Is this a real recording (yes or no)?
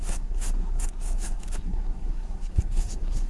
no